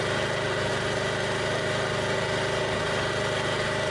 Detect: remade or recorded recorded